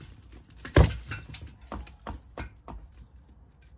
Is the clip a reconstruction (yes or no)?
no